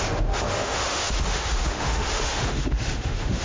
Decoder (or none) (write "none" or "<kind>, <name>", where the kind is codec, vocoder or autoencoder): autoencoder, DAC-VAE